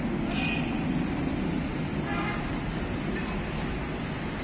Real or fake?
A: real